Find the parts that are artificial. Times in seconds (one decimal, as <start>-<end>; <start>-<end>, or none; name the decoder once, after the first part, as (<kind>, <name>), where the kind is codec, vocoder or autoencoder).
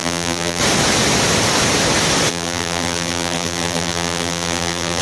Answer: 0.0-0.6 (vocoder, BigVGAN v2); 2.3-5.0